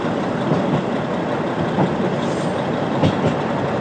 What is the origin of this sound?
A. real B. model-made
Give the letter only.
A